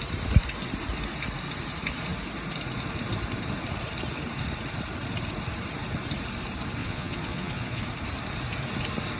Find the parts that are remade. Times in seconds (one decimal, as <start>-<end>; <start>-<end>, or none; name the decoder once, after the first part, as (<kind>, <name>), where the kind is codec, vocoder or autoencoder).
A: 6.8-7.8 (vocoder, Vocos)